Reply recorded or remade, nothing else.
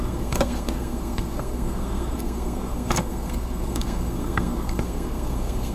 remade